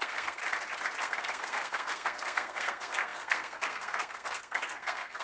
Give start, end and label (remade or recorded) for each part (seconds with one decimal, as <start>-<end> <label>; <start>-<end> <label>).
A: 0.0-0.4 remade; 0.4-1.0 recorded; 1.0-5.2 remade